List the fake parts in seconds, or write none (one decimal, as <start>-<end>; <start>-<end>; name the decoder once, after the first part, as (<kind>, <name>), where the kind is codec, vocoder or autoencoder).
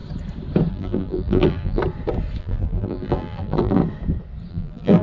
0.7-1.8 (vocoder, BigVGAN v2); 2.4-3.8; 4.5-5.0